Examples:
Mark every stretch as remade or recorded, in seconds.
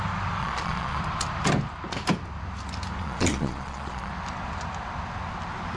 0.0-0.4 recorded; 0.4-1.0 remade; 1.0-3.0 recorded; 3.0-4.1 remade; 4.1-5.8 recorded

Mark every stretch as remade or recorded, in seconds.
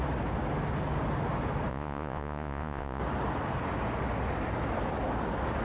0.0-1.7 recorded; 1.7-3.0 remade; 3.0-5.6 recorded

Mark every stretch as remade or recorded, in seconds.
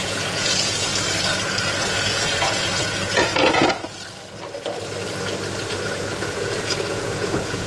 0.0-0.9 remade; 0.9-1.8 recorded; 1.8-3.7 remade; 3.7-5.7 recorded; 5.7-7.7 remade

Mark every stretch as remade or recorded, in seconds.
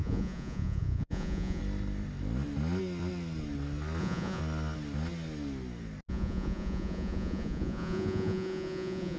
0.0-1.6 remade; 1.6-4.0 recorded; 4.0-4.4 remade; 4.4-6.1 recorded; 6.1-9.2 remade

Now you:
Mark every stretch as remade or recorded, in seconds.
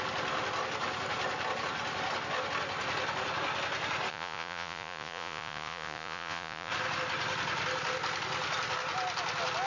0.0-4.1 recorded; 4.1-6.7 remade; 6.7-9.7 recorded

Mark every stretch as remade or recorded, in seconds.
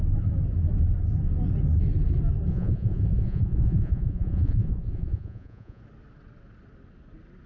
0.0-2.5 recorded; 2.5-5.8 remade; 5.8-7.5 recorded